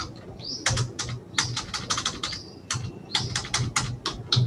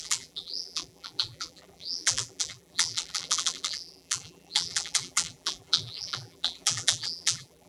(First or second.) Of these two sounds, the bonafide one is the first